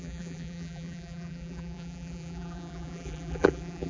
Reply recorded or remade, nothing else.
remade